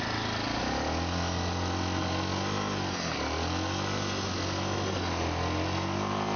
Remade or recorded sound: recorded